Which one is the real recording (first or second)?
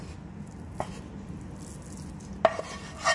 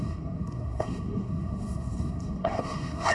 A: first